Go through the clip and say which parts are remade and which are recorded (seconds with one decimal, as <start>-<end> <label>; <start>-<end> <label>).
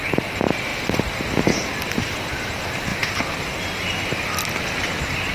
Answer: 0.0-5.3 recorded